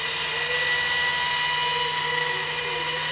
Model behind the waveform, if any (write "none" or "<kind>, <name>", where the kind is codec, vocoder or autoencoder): none